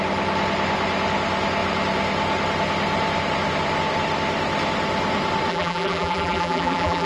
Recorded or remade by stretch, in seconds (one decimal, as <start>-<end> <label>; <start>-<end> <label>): 0.0-5.5 recorded; 5.5-7.1 remade